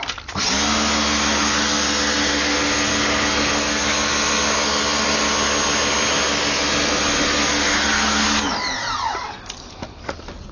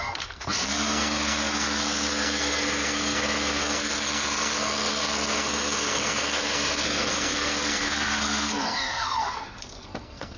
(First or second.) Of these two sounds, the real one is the first